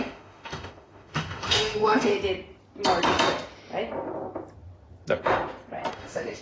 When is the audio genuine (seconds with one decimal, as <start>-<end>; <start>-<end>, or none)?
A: 2.1-5.9